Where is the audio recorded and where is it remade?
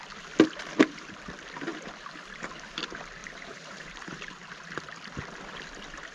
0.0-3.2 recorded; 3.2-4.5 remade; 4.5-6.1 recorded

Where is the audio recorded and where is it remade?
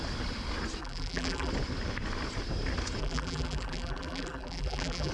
0.0-0.8 recorded; 0.8-1.5 remade; 1.5-3.0 recorded; 3.0-5.1 remade